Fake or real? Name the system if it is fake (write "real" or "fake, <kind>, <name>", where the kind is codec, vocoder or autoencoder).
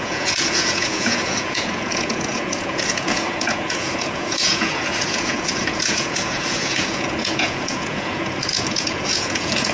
fake, vocoder, Vocos